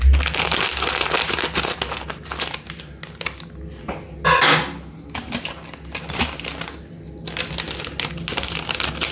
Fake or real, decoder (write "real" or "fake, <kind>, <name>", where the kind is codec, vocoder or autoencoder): real